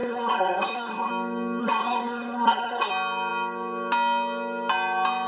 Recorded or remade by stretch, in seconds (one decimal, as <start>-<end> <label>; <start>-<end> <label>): 0.0-1.1 remade; 1.1-1.6 recorded; 1.6-2.9 remade; 2.9-5.3 recorded